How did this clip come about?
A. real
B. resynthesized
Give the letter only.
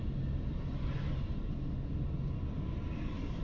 A